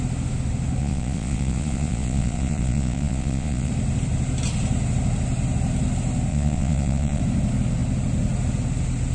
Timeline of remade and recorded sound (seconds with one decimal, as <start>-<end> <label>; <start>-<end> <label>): 0.0-0.8 recorded; 0.8-3.7 remade; 3.7-6.3 recorded; 6.3-7.2 remade; 7.2-9.1 recorded